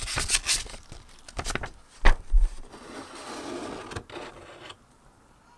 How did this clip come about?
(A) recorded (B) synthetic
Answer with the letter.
A